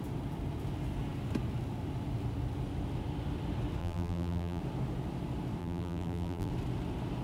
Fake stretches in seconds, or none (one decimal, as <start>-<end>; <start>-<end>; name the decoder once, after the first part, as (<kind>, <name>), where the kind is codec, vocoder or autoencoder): 3.8-4.6 (vocoder, BigVGAN v2); 5.6-6.5